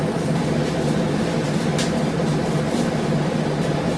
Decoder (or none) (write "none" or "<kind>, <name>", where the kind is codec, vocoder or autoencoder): none